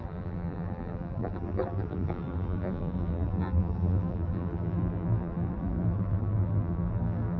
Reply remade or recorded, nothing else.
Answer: remade